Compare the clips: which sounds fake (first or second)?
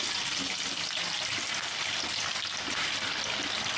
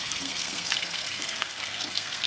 second